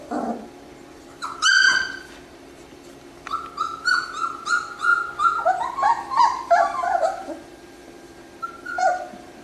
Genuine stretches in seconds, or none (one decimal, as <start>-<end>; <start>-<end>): 3.3-3.9; 4.9-6.2